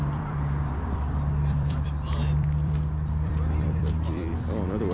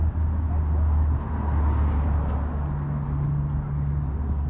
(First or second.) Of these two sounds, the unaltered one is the second